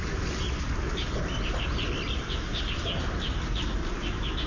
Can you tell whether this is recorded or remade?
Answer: recorded